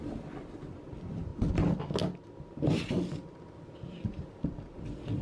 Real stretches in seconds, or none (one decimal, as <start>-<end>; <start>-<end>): 0.0-5.2

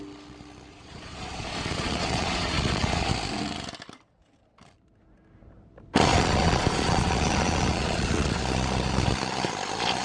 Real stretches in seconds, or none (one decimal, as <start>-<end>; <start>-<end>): 0.0-0.7; 3.1-6.1; 8.4-10.0